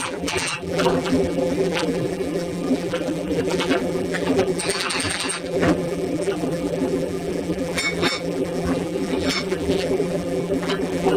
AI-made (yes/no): yes